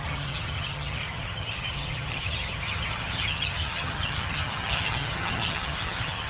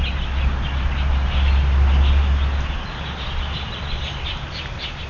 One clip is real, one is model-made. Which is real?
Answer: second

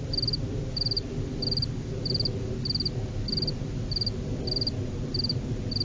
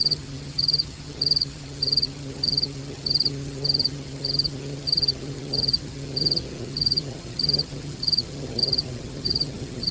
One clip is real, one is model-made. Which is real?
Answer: first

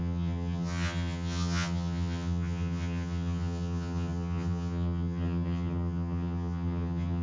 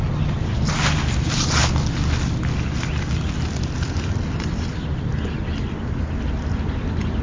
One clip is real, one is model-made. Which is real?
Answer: second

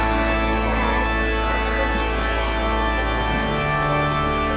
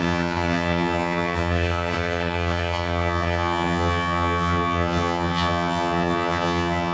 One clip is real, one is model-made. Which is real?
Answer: first